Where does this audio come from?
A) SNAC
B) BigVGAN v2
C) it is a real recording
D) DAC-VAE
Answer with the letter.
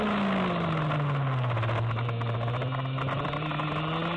C